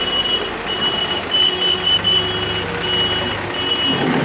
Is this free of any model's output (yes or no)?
yes